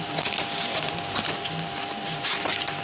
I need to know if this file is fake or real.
fake